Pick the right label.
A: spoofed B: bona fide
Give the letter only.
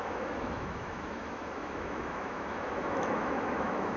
A